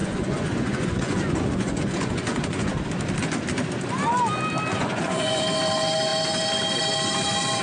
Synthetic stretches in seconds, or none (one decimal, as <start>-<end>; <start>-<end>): 0.0-2.7; 4.7-5.4